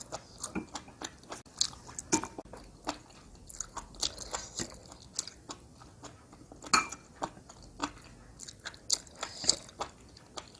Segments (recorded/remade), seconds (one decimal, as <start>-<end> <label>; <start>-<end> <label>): 0.0-10.6 recorded